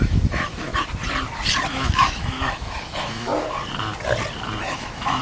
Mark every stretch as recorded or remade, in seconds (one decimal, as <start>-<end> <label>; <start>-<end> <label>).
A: 0.0-0.7 remade; 0.7-1.7 recorded; 1.7-3.3 remade; 3.3-4.6 recorded; 4.6-5.2 remade